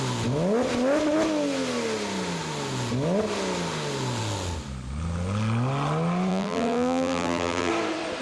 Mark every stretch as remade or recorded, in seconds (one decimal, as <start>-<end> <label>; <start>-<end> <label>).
0.0-6.3 recorded; 6.3-7.7 remade; 7.7-8.2 recorded